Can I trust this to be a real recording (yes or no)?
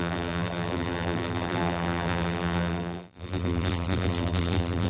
no